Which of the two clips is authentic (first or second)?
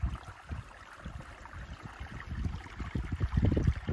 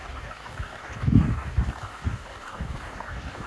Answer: first